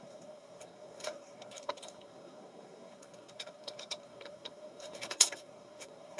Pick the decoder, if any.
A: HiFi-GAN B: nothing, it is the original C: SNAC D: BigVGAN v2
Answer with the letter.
C